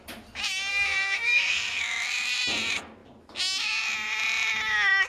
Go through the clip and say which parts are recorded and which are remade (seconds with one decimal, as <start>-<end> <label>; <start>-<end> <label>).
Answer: 0.0-0.7 recorded; 0.7-1.8 remade; 1.8-5.1 recorded